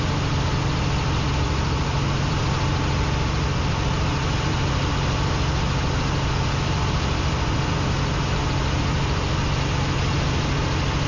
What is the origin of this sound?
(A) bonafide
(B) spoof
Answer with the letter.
A